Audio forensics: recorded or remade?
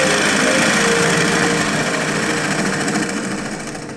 recorded